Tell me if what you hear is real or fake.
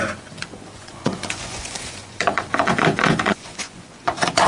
fake